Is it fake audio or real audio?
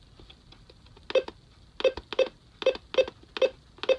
real